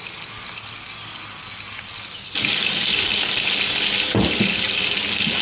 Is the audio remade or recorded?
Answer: recorded